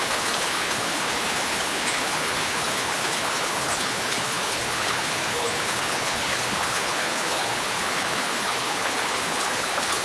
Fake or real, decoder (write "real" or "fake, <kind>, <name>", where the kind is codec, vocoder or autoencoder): fake, codec, HILCodec